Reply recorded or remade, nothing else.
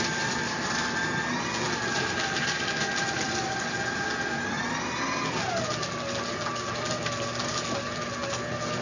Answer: recorded